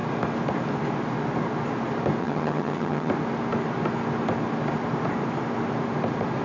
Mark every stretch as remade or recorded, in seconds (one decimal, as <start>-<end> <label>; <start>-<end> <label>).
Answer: 0.0-2.2 recorded; 2.2-3.1 remade; 3.1-6.4 recorded